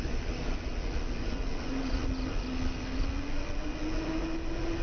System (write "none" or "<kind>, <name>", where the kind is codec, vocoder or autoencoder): none